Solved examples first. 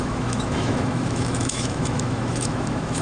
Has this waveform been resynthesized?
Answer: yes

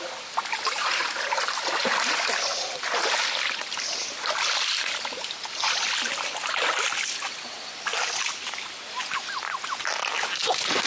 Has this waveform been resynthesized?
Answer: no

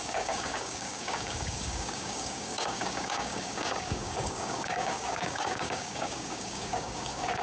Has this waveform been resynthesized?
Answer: yes